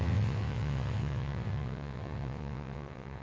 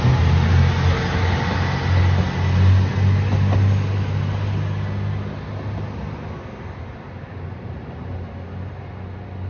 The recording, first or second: second